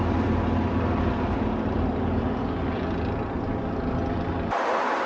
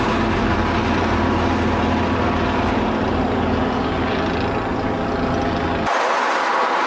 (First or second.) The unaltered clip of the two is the second